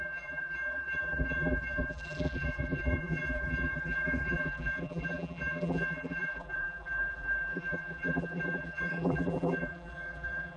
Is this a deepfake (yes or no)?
yes